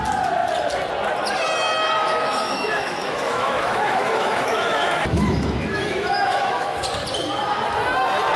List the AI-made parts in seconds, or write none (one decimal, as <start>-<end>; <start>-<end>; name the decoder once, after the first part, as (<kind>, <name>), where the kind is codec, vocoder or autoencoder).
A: 2.0-6.8 (autoencoder, DAC-VAE)